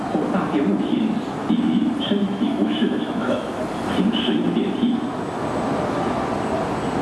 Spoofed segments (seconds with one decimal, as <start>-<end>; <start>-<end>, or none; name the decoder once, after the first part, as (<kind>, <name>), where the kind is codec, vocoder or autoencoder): 2.2-3.6 (autoencoder, DAC-VAE)